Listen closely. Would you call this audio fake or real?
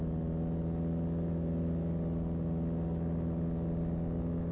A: real